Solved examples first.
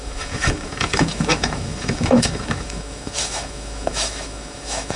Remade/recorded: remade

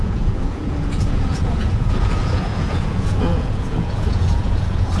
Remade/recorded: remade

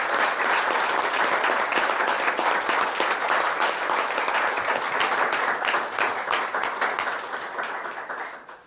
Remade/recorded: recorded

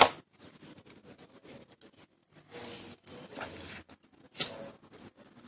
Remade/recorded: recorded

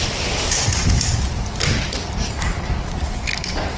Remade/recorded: recorded